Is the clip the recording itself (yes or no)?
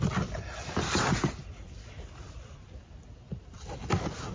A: yes